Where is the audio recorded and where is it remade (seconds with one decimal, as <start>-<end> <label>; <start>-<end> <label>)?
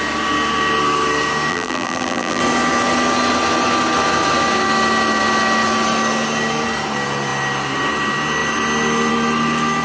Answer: 0.0-1.5 recorded; 1.5-2.4 remade; 2.4-9.8 recorded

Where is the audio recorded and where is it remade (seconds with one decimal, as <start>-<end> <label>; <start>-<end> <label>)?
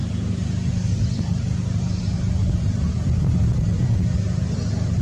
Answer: 0.0-2.0 recorded; 2.0-5.0 remade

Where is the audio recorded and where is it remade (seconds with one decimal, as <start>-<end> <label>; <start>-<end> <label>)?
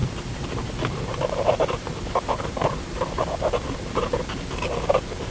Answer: 0.0-5.3 recorded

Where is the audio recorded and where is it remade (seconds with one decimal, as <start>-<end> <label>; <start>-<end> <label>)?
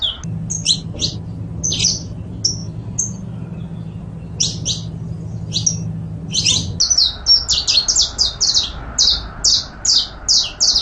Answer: 0.0-10.8 recorded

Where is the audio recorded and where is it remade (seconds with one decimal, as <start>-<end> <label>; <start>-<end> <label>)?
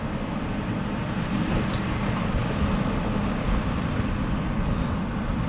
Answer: 0.0-5.5 recorded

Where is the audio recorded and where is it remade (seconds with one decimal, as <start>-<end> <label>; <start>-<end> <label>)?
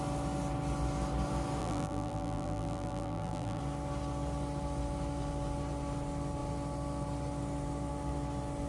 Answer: 0.0-1.6 recorded; 1.6-3.6 remade; 3.6-8.7 recorded